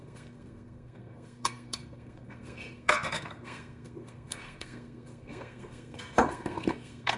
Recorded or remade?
remade